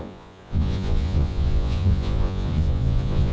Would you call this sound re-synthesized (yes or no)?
yes